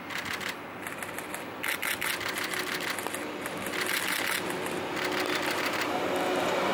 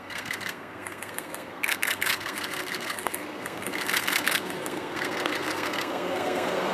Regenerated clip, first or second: second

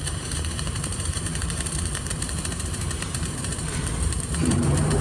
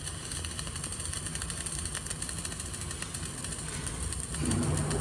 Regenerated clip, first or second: first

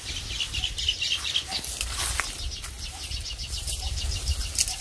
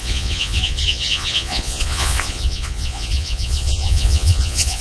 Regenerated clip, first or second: second